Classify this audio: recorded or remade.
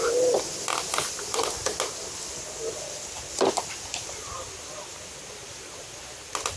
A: recorded